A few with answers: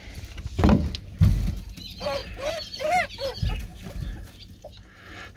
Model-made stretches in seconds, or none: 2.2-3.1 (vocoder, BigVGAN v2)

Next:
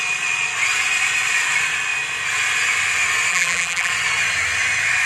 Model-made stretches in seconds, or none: 3.3-3.9 (vocoder, BigVGAN v2)

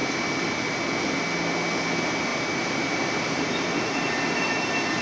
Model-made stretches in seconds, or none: 2.3-4.5 (vocoder, BigVGAN v2)

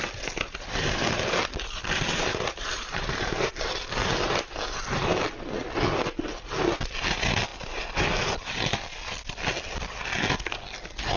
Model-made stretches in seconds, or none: 1.8-3.5 (vocoder, BigVGAN v2)

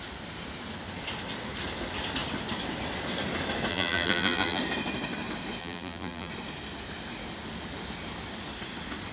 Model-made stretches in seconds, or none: 3.7-4.6 (vocoder, BigVGAN v2); 5.6-6.3